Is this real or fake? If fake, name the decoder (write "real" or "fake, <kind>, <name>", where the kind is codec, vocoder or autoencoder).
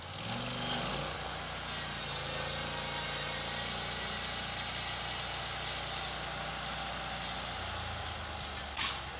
real